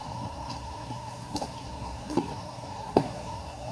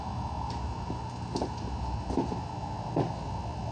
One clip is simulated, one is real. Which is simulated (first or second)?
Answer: first